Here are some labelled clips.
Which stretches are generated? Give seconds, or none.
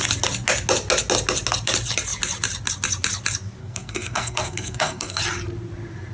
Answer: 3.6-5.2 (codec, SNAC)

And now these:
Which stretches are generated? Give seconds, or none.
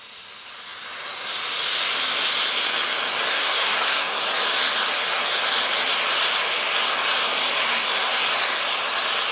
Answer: 3.3-4.2 (codec, SNAC); 7.6-8.2